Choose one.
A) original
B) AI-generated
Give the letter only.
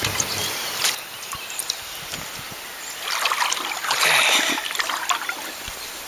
A